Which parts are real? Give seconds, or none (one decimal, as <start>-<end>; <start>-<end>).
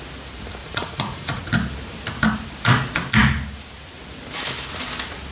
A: 0.0-0.6; 1.4-5.3